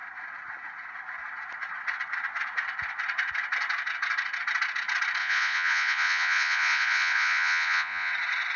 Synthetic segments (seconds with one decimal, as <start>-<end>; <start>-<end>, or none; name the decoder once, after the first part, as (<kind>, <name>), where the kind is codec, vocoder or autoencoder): 5.2-8.1 (vocoder, Vocos)